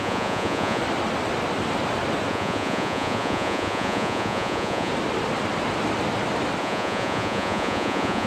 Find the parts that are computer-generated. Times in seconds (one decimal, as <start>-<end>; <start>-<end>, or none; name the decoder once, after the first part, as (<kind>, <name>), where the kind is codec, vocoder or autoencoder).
0.0-0.8 (vocoder, Vocos); 2.3-4.9; 6.6-8.3